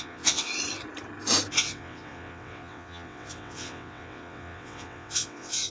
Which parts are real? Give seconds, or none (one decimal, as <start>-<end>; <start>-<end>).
0.5-1.5